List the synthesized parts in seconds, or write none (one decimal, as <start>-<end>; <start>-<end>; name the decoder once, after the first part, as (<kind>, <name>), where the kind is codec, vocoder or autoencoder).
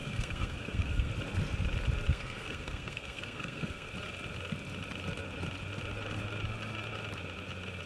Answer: 0.0-1.1 (codec, SNAC); 2.1-3.9